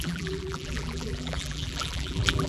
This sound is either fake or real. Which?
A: fake